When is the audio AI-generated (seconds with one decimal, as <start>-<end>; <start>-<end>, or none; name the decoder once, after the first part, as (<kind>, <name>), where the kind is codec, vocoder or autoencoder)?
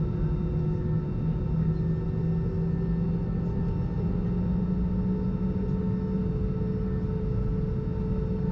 none